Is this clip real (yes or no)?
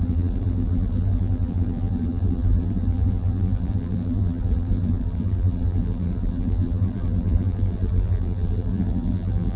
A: no